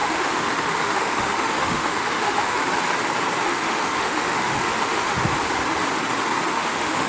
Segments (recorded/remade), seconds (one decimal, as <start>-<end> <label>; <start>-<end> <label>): 0.0-2.6 remade; 2.6-3.4 recorded; 3.4-5.3 remade; 5.3-6.5 recorded; 6.5-7.1 remade